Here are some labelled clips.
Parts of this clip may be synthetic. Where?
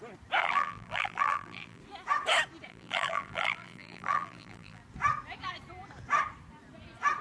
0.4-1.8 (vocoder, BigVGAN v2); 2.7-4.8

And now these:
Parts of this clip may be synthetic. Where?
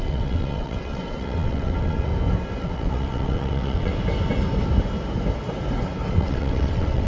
0.0-2.1 (vocoder, WaveNeXt); 2.6-3.9; 6.1-7.1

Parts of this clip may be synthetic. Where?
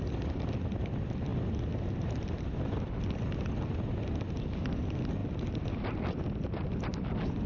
none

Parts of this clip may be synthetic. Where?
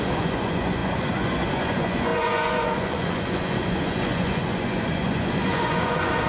0.0-6.3 (vocoder, Vocos)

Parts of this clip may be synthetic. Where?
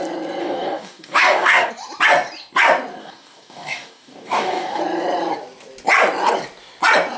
0.4-1.7 (codec, DAC); 3.0-4.8